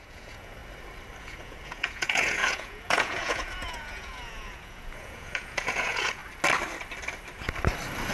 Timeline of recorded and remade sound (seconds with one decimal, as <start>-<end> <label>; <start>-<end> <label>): 0.0-0.6 remade; 0.6-1.2 recorded; 1.2-6.2 remade; 6.2-8.1 recorded